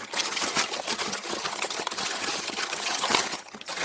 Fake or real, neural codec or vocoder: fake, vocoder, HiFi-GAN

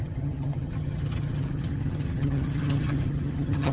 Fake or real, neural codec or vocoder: fake, vocoder, HiFi-GAN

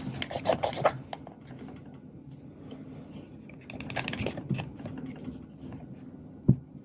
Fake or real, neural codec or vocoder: real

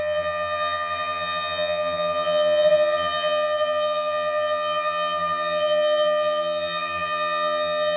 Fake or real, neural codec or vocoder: fake, vocoder, HiFi-GAN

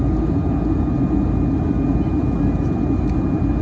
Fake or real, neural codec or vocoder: real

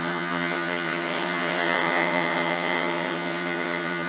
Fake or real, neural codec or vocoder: fake, vocoder, HiFi-GAN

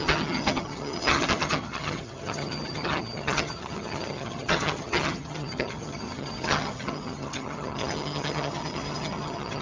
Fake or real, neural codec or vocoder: fake, vocoder, HiFi-GAN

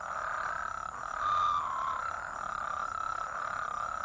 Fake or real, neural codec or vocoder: real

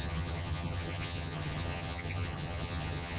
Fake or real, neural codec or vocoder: fake, vocoder, HiFi-GAN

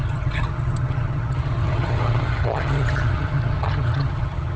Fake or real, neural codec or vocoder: fake, vocoder, HiFi-GAN